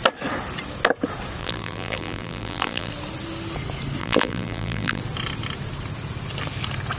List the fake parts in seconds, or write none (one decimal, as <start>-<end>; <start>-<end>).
1.4-2.9; 4.0-5.0